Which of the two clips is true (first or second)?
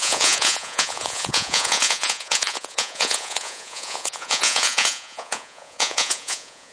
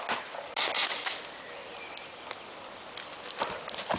second